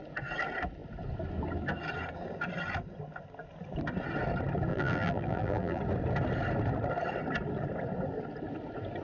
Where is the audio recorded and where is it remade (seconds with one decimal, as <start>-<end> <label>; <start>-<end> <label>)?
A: 0.0-4.7 recorded; 4.7-5.8 remade; 5.8-9.0 recorded